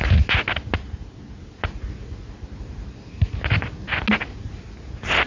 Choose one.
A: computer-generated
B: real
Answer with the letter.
B